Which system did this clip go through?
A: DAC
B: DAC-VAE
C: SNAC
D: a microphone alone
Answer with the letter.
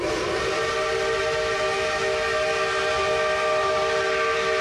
D